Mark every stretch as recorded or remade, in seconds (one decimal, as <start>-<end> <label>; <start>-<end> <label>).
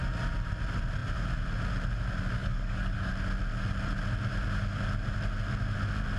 0.0-2.4 recorded; 2.4-3.1 remade; 3.1-6.2 recorded